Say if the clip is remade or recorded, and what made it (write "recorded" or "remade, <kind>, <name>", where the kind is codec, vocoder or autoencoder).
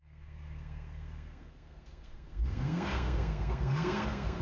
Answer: remade, codec, SNAC